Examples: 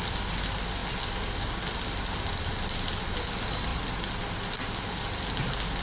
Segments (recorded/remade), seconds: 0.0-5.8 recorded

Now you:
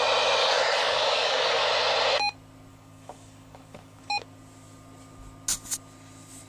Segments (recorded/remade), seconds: 0.0-0.4 recorded; 0.4-1.6 remade; 1.6-2.7 recorded; 2.7-4.2 remade; 4.2-6.5 recorded

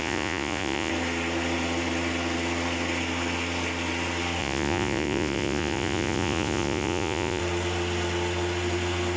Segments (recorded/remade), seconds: 0.0-0.9 remade; 0.9-4.4 recorded; 4.4-7.4 remade; 7.4-9.2 recorded

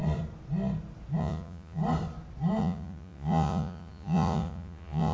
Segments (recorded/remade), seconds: 0.0-1.2 recorded; 1.2-1.8 remade; 1.8-2.6 recorded; 2.6-5.1 remade

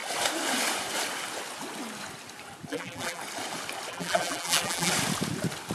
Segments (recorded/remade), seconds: 0.0-2.7 recorded; 2.7-3.2 remade; 3.2-3.9 recorded; 3.9-4.9 remade; 4.9-5.7 recorded

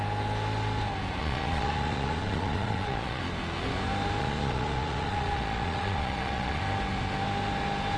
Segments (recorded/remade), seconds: 0.0-1.2 recorded; 1.2-3.2 remade; 3.2-4.2 recorded; 4.2-6.6 remade; 6.6-8.0 recorded

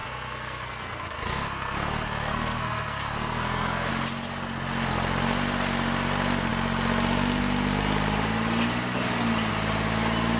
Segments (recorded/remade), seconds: 0.0-3.9 remade; 3.9-10.4 recorded

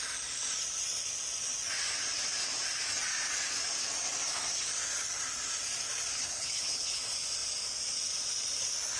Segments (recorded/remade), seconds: 0.0-6.1 recorded; 6.1-7.0 remade; 7.0-9.0 recorded